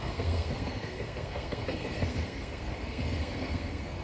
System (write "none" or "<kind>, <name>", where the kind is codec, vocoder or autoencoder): codec, SNAC